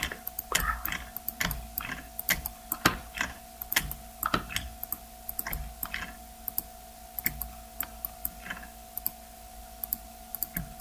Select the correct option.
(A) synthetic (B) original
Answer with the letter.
B